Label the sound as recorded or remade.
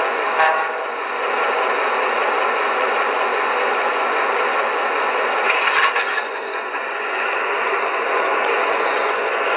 remade